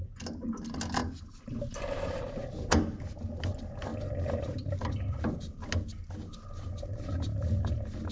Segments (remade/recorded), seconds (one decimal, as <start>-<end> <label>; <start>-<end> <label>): 0.0-1.0 recorded; 1.0-1.5 remade; 1.5-3.9 recorded; 3.9-4.8 remade; 4.8-8.1 recorded